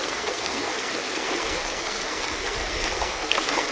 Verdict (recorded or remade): remade